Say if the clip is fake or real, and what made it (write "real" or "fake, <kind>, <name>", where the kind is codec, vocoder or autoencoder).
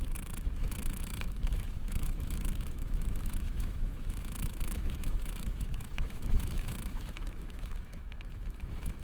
fake, autoencoder, DAC-VAE